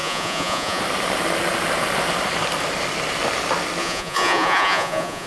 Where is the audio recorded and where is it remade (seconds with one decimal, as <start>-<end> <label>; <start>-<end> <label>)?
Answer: 0.0-0.8 remade; 0.8-3.8 recorded; 3.8-5.3 remade